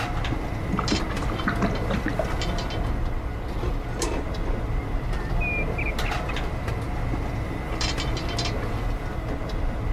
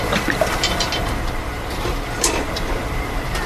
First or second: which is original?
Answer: first